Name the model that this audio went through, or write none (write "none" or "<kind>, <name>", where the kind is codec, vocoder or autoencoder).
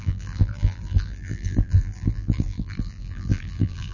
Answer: vocoder, BigVGAN v2